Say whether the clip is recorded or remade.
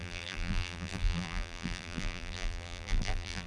remade